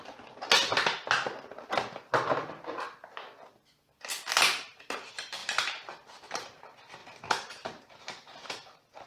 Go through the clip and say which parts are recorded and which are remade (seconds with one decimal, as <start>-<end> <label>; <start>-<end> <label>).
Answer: 0.0-5.4 recorded; 5.4-6.6 remade; 6.6-7.0 recorded; 7.0-7.9 remade; 7.9-9.1 recorded